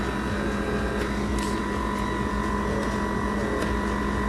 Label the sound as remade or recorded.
recorded